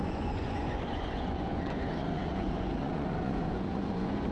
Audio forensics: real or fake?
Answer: fake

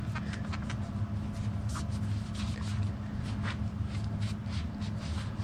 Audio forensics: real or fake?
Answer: real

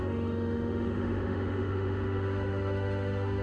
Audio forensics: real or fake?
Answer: fake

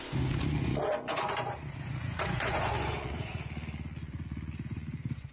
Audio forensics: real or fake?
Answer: fake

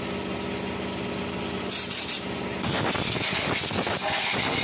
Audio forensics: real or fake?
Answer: real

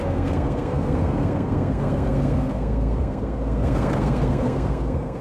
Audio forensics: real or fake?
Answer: fake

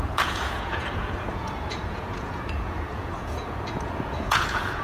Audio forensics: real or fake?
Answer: fake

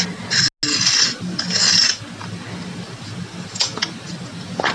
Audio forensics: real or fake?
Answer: real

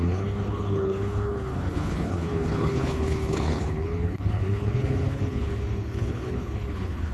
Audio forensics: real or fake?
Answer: fake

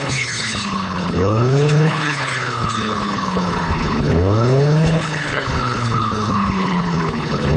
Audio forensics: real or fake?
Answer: fake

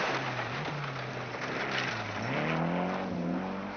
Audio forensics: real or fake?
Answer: real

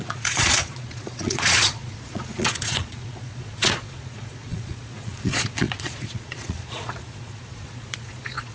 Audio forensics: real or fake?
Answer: fake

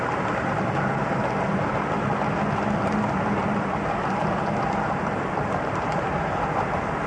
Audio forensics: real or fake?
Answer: real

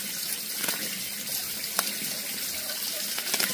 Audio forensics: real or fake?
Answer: real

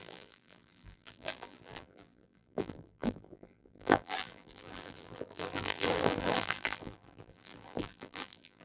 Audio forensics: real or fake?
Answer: fake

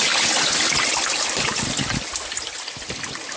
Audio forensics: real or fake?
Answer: real